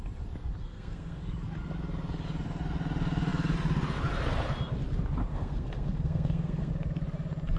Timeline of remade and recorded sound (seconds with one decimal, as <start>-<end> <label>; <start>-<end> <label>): 0.0-0.6 recorded; 0.6-1.2 remade; 1.2-5.3 recorded; 5.3-6.7 remade; 6.7-7.6 recorded